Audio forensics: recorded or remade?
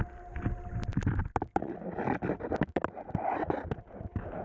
recorded